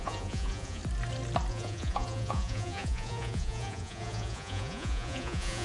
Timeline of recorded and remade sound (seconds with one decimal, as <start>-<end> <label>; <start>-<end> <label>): 0.0-0.8 remade; 0.8-1.5 recorded; 1.5-5.6 remade